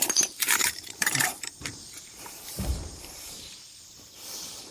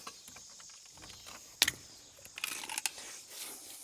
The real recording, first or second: second